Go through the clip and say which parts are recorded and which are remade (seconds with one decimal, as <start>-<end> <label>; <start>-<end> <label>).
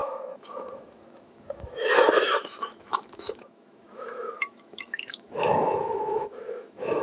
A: 0.0-7.0 remade